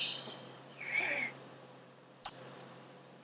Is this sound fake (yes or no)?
yes